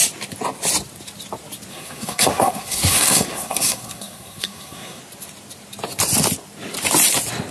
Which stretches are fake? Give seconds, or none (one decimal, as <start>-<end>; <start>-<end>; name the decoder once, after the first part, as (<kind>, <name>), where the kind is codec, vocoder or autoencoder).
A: 1.7-5.0 (codec, SNAC)